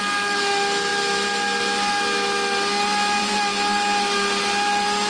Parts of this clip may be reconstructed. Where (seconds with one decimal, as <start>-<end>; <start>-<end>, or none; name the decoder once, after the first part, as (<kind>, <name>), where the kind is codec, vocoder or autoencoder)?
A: none